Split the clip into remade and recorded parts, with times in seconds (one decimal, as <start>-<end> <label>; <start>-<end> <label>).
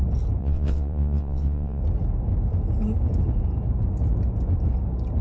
0.0-0.4 recorded; 0.4-1.8 remade; 1.8-5.2 recorded